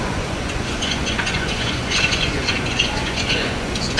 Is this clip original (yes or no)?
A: no